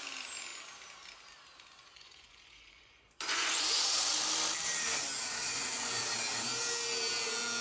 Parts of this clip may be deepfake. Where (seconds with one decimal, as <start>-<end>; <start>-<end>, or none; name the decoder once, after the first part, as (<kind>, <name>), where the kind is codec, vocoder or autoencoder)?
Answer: 1.8-4.1 (vocoder, Vocos); 5.4-6.0